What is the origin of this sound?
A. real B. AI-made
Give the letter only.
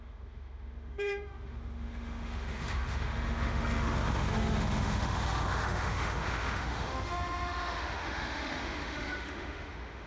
B